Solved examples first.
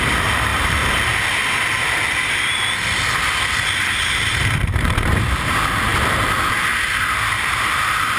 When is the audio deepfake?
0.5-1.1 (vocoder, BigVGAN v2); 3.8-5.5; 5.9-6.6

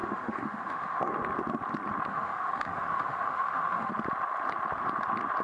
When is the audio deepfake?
0.0-1.0 (autoencoder, DAC-VAE); 2.1-3.9

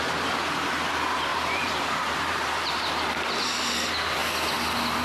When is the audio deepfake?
1.3-3.6 (vocoder, BigVGAN v2)

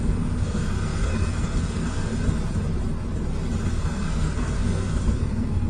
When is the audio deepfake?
0.0-2.1 (codec, SNAC); 3.7-5.7

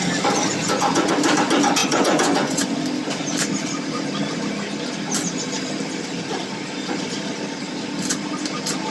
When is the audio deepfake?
0.6-1.1 (vocoder, Vocos); 1.8-2.8

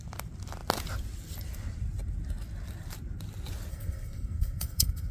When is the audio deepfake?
3.7-5.1 (codec, SNAC)

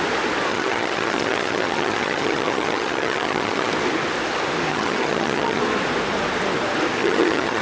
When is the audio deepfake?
0.5-3.7 (vocoder, HiFi-GAN); 4.7-5.6; 7.0-7.6

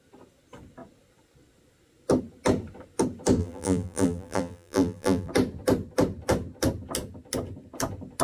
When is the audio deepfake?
3.4-5.3 (vocoder, BigVGAN v2)